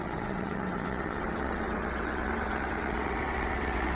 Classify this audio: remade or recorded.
remade